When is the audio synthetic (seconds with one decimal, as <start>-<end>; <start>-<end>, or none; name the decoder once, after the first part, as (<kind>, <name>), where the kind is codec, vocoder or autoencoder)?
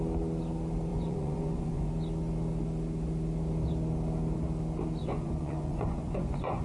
0.9-1.9 (vocoder, Vocos); 5.0-6.6